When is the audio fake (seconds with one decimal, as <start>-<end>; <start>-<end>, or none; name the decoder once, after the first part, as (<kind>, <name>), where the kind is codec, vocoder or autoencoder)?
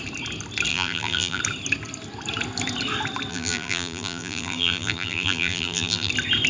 0.7-1.4 (vocoder, BigVGAN v2); 3.3-6.1